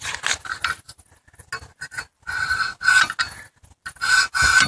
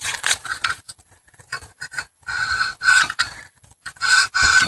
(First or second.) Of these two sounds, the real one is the first